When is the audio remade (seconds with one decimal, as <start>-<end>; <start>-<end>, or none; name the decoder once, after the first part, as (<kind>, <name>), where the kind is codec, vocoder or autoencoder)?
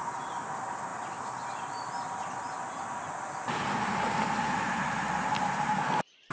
none